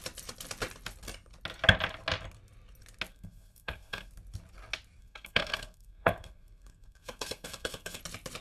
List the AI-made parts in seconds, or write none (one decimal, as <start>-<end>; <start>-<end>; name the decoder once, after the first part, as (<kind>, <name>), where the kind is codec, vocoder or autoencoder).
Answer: 3.1-4.1 (codec, SNAC); 5.0-8.0